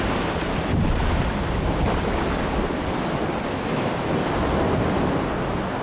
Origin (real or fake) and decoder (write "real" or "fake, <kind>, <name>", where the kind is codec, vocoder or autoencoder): real